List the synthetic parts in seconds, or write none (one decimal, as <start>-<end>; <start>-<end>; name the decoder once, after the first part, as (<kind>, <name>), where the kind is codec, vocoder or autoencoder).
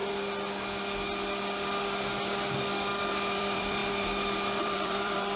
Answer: 3.0-3.8 (vocoder, BigVGAN v2); 4.6-5.4